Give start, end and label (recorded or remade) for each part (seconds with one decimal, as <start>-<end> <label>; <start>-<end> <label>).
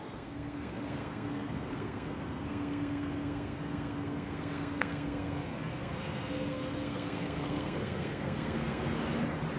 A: 0.0-9.0 remade; 9.0-9.6 recorded